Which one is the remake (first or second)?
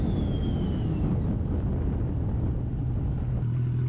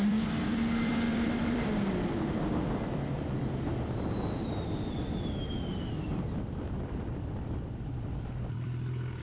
second